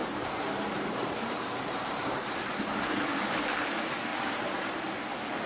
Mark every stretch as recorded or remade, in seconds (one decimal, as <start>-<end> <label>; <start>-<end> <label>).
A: 0.0-3.3 remade; 3.3-4.1 recorded; 4.1-4.7 remade; 4.7-5.5 recorded